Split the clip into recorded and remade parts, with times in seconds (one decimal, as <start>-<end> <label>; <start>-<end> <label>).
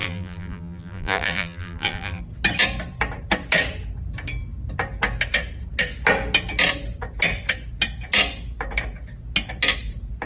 0.0-2.2 remade; 2.2-10.3 recorded